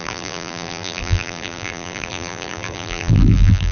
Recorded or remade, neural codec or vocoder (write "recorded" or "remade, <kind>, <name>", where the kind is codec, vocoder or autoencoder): remade, vocoder, BigVGAN v2